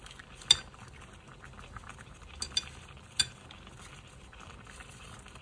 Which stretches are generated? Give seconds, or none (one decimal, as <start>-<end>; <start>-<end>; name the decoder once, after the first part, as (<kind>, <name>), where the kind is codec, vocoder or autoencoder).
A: none